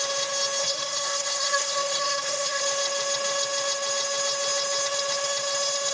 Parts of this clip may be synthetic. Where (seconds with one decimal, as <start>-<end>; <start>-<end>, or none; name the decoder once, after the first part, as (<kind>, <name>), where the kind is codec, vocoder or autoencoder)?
0.6-2.6 (codec, SNAC)